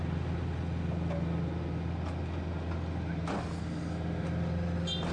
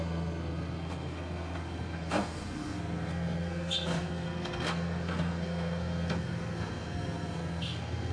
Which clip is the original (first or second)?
first